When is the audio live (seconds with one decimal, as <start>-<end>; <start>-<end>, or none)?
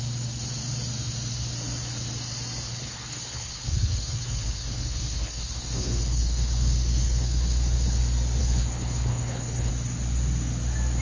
0.0-2.7; 8.0-8.4; 9.7-11.0